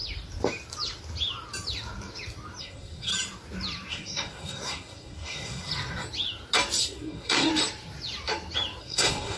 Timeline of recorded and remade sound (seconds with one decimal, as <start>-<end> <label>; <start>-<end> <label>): 0.0-2.6 recorded; 2.6-3.1 remade; 3.1-3.9 recorded; 3.9-5.7 remade; 5.7-6.8 recorded; 6.8-7.5 remade; 7.5-8.8 recorded; 8.8-9.4 remade